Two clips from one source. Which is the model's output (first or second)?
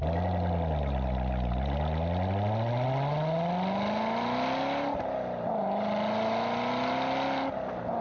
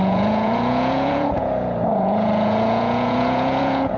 second